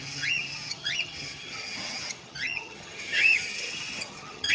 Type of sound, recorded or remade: remade